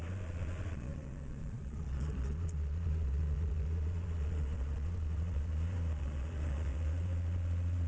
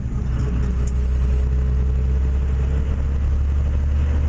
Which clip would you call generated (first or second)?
first